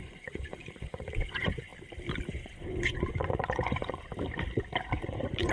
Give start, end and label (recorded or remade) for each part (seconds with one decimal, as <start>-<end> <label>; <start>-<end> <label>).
0.0-1.7 remade; 1.7-2.3 recorded; 2.3-4.1 remade; 4.1-4.8 recorded; 4.8-5.5 remade